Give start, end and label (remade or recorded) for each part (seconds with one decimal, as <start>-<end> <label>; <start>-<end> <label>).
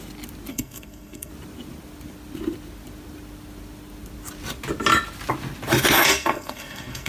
0.0-0.5 recorded; 0.5-1.3 remade; 1.3-6.1 recorded; 6.1-7.1 remade